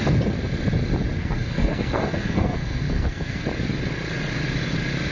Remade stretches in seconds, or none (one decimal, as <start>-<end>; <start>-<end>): 1.2-3.4